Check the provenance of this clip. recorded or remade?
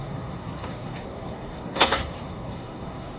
remade